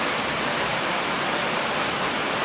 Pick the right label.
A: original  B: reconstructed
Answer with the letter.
A